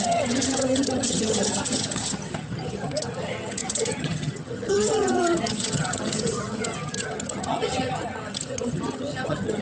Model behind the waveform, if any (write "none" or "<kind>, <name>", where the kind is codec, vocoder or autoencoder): vocoder, HiFi-GAN